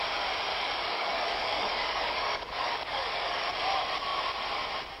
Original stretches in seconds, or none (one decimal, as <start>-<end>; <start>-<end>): 0.0-0.5; 3.5-5.0